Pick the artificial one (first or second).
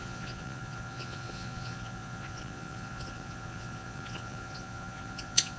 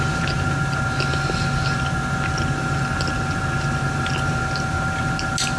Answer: first